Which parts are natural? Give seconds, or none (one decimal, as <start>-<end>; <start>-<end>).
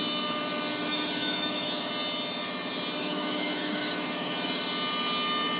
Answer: 0.0-0.8; 1.9-3.0; 4.6-5.6